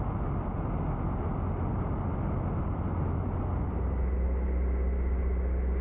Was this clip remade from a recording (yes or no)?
no